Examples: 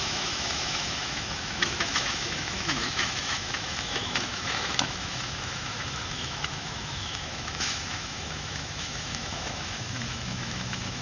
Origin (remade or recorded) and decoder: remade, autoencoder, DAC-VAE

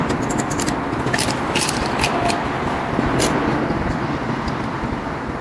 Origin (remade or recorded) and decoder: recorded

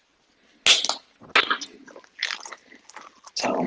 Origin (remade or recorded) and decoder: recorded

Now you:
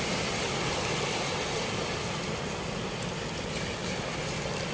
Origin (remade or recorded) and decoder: recorded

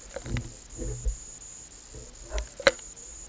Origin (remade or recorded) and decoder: recorded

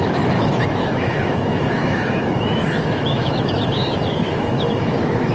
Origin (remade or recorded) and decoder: remade, autoencoder, DAC-VAE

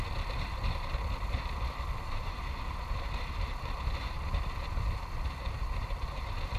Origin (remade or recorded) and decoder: recorded